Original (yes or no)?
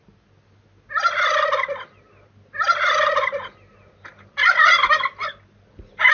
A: yes